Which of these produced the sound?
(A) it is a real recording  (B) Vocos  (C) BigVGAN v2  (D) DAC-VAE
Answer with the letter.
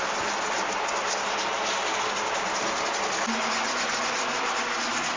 A